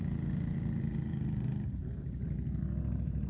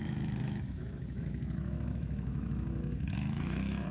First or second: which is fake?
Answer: second